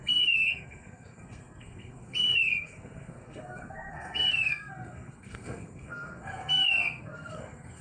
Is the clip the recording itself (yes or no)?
no